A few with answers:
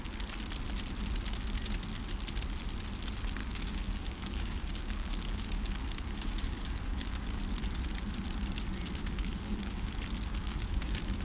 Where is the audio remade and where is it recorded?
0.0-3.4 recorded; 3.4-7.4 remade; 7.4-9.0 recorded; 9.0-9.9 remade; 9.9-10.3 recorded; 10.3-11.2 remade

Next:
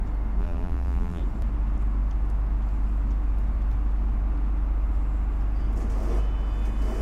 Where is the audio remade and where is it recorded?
0.0-0.4 recorded; 0.4-1.2 remade; 1.2-7.0 recorded

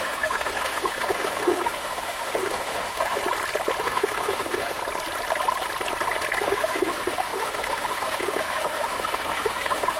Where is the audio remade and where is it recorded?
0.0-3.2 remade; 3.2-3.8 recorded; 3.8-4.8 remade; 4.8-6.4 recorded; 6.4-10.0 remade

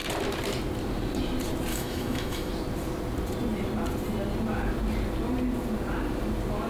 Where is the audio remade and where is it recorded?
0.0-1.7 recorded; 1.7-2.5 remade; 2.5-6.7 recorded

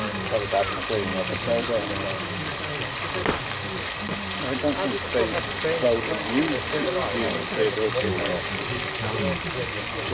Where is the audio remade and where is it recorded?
0.0-1.1 recorded; 1.1-2.9 remade; 2.9-10.1 recorded